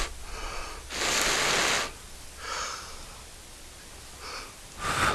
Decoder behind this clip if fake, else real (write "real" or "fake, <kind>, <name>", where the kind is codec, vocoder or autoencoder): real